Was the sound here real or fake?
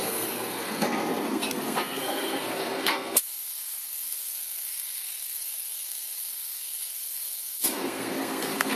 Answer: fake